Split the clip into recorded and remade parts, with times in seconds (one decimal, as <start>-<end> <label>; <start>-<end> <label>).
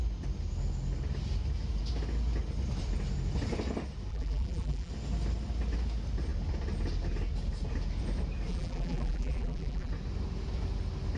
0.0-4.1 recorded; 4.1-4.9 remade; 4.9-8.5 recorded; 8.5-9.9 remade; 9.9-11.2 recorded